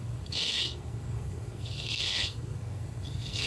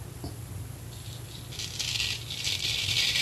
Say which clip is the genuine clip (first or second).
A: second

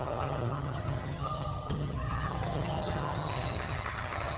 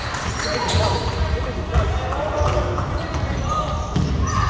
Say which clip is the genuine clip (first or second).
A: second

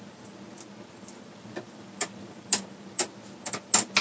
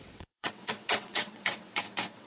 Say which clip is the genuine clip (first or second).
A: first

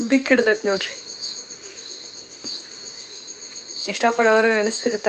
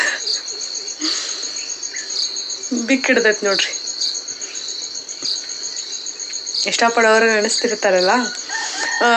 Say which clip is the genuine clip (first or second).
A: second